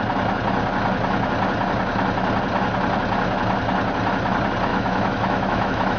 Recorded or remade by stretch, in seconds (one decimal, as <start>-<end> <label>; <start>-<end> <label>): 0.0-4.7 recorded; 4.7-6.0 remade